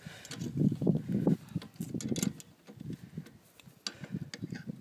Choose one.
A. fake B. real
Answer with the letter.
B